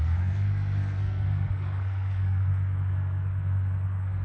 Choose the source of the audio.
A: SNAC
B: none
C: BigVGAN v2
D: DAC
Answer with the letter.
A